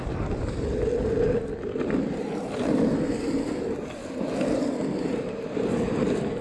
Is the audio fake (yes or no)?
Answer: no